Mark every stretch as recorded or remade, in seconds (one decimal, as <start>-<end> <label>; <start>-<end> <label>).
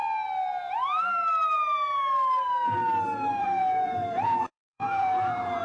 0.0-3.4 recorded; 3.4-5.6 remade